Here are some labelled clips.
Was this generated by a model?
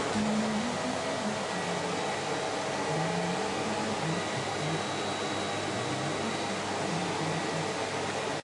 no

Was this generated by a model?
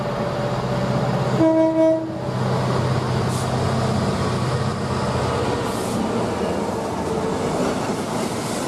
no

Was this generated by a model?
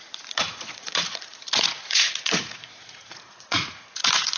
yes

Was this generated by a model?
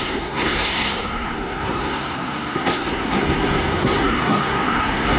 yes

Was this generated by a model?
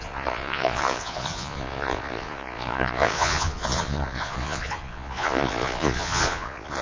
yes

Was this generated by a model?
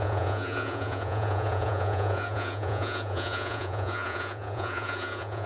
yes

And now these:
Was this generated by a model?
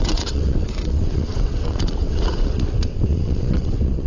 yes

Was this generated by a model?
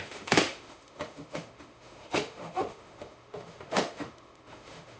yes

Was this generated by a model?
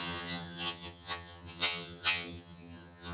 yes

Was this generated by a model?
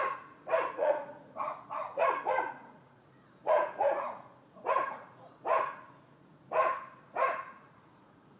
yes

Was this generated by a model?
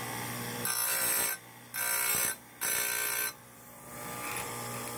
no